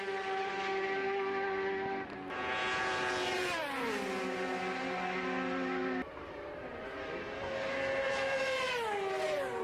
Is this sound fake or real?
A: real